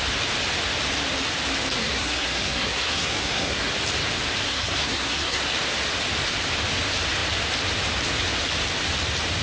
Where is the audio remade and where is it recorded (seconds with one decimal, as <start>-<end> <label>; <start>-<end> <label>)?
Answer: 0.0-1.8 recorded; 1.8-3.7 remade; 3.7-4.4 recorded; 4.4-5.4 remade; 5.4-9.4 recorded